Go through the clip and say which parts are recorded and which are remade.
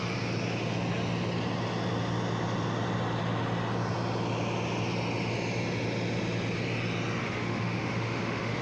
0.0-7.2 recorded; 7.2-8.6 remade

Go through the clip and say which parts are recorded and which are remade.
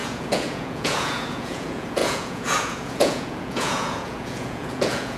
0.0-5.2 remade